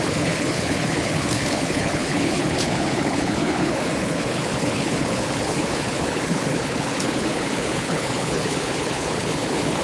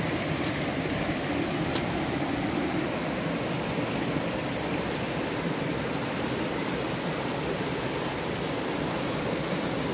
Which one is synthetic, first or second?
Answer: first